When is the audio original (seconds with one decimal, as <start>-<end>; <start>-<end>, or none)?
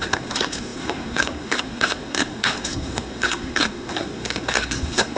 none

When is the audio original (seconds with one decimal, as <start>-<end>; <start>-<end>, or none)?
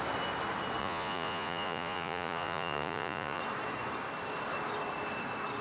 0.0-0.8; 3.4-5.6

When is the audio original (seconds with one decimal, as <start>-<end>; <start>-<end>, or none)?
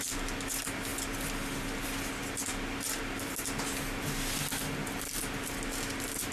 0.0-6.3